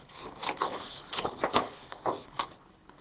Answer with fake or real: fake